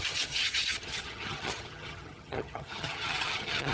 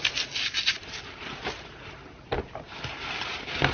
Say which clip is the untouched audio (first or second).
second